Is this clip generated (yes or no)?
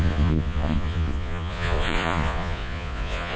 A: yes